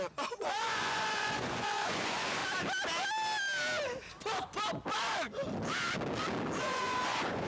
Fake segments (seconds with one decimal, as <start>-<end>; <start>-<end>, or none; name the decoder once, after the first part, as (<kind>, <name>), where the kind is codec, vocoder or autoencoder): 0.0-2.4 (vocoder, Vocos); 6.6-7.5